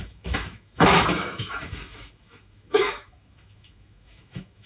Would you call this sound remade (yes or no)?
yes